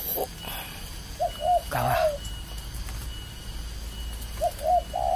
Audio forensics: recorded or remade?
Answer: recorded